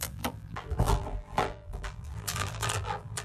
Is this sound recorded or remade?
remade